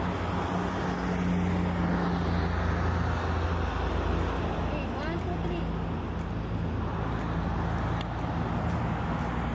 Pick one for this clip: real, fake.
real